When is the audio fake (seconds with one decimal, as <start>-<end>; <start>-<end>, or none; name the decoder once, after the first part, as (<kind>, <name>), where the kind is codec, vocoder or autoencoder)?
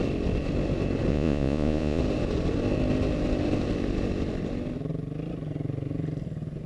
1.1-2.0 (vocoder, Vocos)